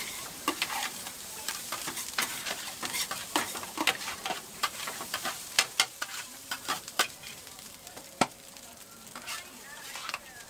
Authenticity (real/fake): fake